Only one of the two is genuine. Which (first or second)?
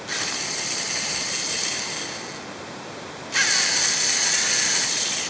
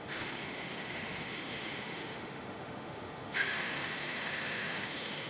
first